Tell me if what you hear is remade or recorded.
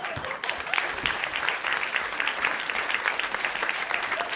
recorded